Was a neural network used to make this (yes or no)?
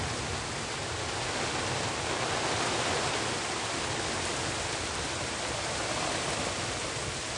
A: no